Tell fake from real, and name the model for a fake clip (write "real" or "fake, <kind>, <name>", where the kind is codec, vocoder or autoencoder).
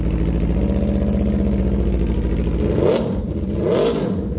real